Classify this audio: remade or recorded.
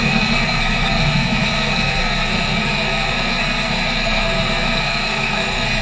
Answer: remade